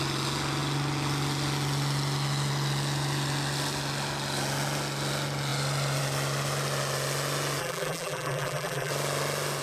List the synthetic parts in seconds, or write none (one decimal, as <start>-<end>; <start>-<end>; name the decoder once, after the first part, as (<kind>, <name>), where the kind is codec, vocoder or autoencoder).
7.6-8.9 (vocoder, BigVGAN v2)